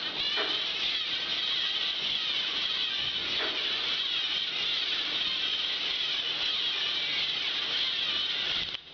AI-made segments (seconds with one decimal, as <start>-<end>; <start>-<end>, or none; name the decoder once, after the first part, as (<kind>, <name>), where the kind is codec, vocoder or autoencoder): 1.3-4.3 (vocoder, Vocos)